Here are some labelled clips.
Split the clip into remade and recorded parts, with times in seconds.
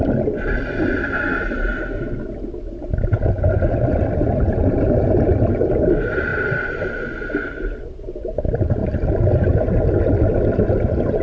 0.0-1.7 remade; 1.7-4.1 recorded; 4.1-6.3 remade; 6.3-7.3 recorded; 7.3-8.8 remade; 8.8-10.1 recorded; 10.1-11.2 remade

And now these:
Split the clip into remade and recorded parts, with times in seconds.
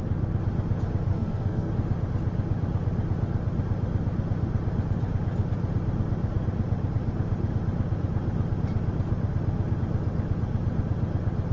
0.0-1.1 recorded; 1.1-1.7 remade; 1.7-11.5 recorded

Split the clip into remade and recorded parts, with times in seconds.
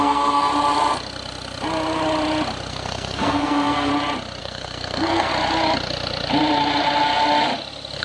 0.0-0.5 remade; 0.5-2.7 recorded; 2.7-3.9 remade; 3.9-4.4 recorded; 4.4-5.3 remade; 5.3-8.0 recorded